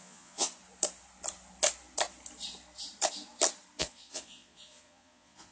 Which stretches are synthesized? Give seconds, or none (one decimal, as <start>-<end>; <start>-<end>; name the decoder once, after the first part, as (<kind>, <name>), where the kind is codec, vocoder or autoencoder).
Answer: 0.0-0.5 (vocoder, Vocos); 3.8-5.5

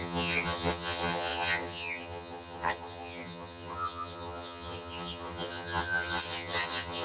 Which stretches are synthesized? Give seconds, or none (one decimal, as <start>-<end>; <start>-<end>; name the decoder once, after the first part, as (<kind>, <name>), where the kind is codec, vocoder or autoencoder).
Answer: 0.0-7.0 (vocoder, HiFi-GAN)